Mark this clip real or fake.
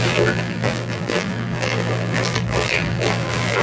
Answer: fake